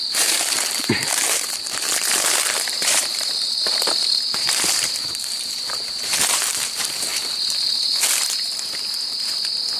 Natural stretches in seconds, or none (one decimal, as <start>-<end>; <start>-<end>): 7.1-9.8